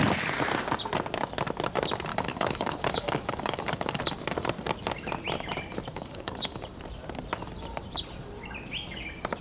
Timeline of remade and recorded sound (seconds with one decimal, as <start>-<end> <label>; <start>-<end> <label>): 0.0-2.1 recorded; 2.1-4.0 remade; 4.0-5.9 recorded; 5.9-6.6 remade; 6.6-9.4 recorded